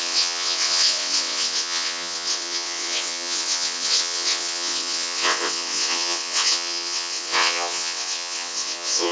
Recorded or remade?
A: remade